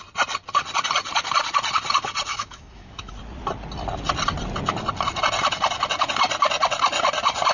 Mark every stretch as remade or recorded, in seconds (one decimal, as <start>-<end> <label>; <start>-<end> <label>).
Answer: 0.0-2.3 recorded; 2.3-3.1 remade; 3.1-7.5 recorded